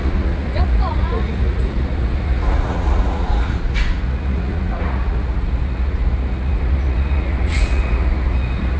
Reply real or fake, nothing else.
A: fake